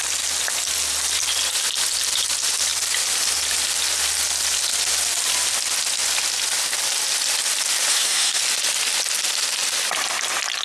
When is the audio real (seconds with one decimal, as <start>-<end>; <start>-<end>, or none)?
0.0-7.9; 8.4-10.6